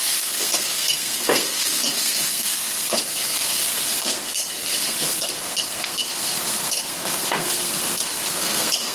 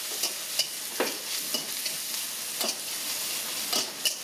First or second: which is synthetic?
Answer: first